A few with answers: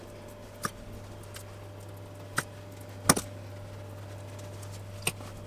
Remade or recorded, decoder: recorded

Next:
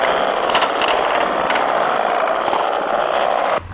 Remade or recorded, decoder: recorded